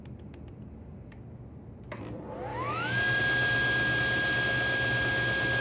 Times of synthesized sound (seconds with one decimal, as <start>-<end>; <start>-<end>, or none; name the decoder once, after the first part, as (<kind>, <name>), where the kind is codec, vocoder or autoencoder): 2.5-3.2 (autoencoder, DAC-VAE)